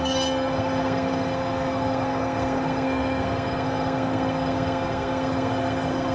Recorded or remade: remade